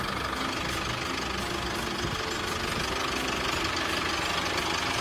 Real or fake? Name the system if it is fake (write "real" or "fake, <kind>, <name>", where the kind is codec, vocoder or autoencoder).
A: real